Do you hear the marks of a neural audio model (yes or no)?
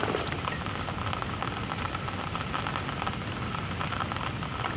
no